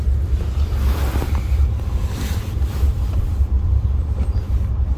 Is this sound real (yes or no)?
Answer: no